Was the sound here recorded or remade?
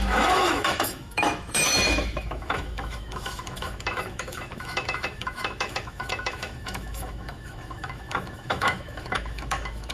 remade